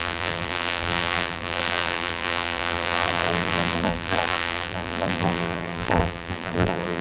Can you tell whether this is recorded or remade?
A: remade